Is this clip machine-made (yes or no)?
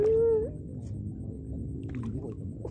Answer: no